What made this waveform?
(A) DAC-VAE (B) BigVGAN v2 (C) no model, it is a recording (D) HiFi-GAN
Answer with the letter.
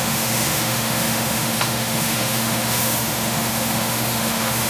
A